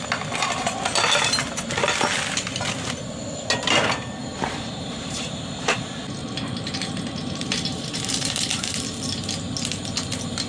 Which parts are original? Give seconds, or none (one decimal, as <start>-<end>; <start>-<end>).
0.0-4.2; 5.4-6.2; 8.8-10.5